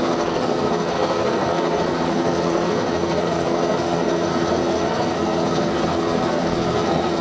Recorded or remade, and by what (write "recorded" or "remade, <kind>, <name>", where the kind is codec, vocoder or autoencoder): remade, codec, SNAC